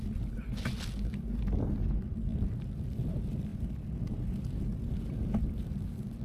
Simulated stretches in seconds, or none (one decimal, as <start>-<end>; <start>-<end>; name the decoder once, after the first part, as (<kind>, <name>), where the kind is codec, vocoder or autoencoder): none